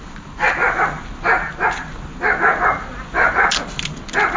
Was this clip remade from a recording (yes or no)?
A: no